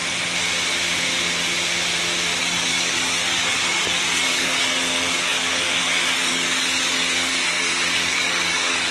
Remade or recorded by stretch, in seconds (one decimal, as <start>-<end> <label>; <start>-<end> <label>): 0.0-2.4 recorded; 2.4-8.9 remade